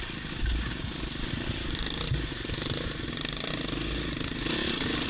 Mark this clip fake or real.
real